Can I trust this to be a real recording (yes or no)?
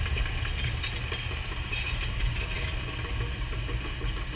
yes